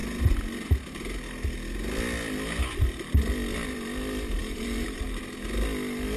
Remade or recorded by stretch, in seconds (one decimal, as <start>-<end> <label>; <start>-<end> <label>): 0.0-4.4 recorded; 4.4-5.2 remade; 5.2-6.2 recorded